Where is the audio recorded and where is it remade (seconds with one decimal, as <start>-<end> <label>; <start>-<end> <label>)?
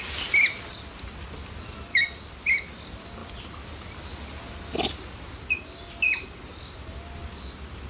0.0-7.9 recorded